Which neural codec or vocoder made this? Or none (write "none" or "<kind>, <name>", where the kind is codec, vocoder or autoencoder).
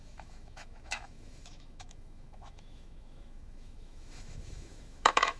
autoencoder, DAC-VAE